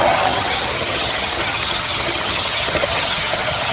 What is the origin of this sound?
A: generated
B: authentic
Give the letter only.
A